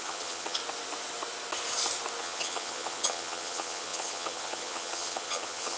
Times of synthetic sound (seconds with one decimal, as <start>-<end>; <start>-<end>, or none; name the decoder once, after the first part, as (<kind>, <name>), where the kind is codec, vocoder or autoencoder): 0.0-0.6 (vocoder, HiFi-GAN); 2.2-5.8